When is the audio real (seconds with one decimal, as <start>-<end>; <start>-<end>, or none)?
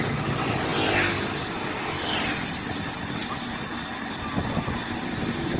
0.0-5.6